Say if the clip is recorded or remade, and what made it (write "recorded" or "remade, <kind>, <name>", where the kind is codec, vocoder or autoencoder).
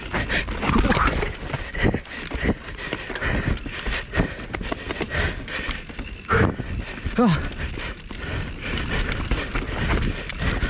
recorded